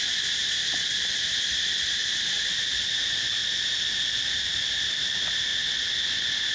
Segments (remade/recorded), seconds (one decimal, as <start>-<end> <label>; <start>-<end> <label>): 0.0-3.4 remade; 3.4-4.1 recorded; 4.1-5.5 remade; 5.5-6.5 recorded